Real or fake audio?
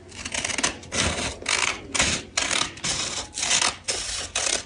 real